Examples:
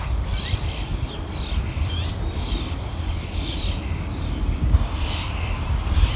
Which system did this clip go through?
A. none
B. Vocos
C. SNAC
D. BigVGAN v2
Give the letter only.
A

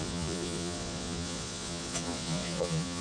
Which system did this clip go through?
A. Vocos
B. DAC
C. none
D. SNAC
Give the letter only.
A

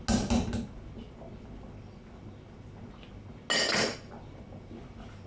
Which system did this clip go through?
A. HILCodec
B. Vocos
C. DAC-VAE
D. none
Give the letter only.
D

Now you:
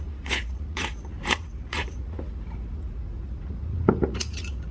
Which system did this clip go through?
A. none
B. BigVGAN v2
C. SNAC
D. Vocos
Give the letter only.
D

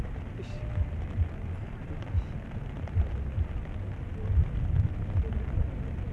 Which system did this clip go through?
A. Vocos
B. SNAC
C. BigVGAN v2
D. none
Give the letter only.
D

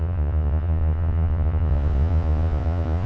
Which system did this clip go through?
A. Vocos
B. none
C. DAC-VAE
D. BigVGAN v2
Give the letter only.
A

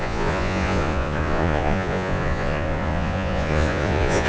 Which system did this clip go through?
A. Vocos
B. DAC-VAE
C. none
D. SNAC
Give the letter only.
A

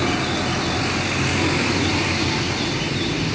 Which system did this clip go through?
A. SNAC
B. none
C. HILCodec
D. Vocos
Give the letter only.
B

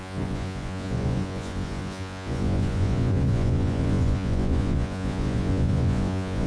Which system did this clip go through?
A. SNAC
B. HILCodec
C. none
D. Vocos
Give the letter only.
D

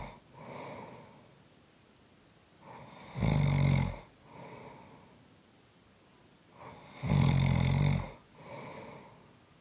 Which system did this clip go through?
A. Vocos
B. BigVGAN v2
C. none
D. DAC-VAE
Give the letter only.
C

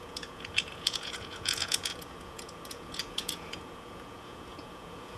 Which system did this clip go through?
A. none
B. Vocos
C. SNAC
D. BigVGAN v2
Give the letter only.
B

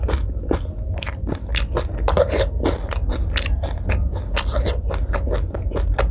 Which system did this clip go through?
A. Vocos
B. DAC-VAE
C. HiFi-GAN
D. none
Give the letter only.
D